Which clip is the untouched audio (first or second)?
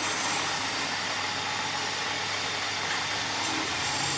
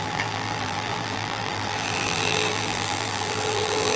first